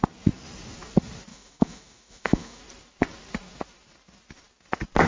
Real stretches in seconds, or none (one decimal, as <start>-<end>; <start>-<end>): 0.0-1.3; 2.6-5.1